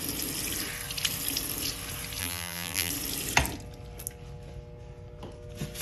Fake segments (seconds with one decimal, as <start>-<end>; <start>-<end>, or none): 2.2-2.9